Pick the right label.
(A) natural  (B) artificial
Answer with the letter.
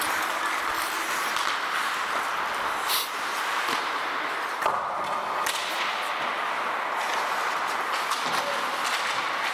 A